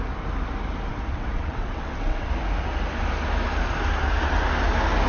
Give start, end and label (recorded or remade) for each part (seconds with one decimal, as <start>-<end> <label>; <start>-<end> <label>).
0.0-0.9 recorded; 0.9-2.3 remade; 2.3-5.1 recorded